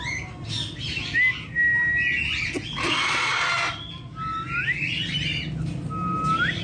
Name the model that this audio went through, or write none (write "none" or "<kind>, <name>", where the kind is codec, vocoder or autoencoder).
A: none